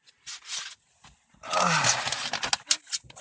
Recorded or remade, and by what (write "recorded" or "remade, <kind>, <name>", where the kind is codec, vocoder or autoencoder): recorded